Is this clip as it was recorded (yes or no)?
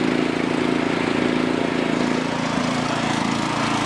yes